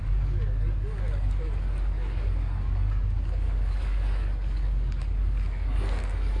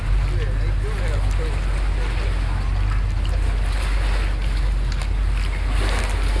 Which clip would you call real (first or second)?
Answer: second